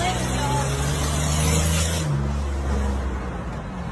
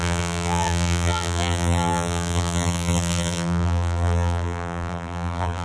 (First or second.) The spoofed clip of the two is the second